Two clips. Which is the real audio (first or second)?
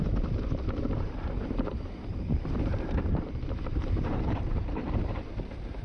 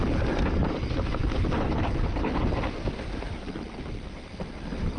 second